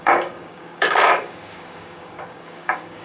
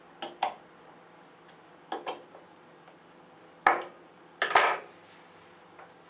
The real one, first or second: second